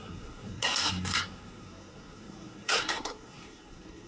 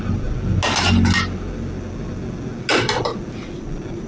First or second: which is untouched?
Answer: second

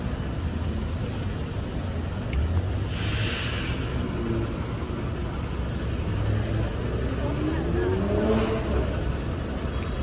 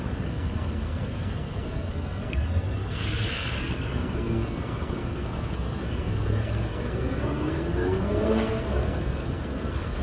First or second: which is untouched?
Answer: first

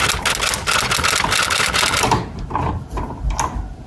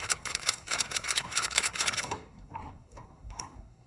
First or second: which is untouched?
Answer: first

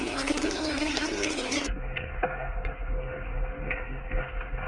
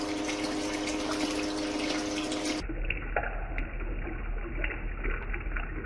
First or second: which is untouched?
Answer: second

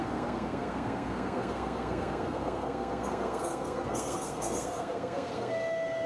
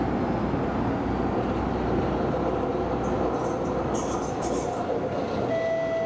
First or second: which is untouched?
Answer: second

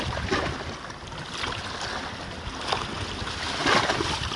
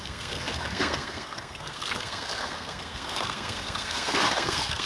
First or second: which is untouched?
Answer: first